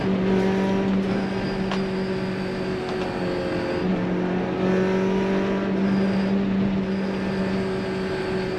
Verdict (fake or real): real